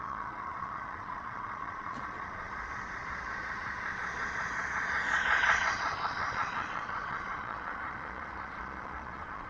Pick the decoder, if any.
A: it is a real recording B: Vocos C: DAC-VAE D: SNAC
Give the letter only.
B